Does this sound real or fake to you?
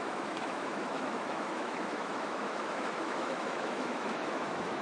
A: fake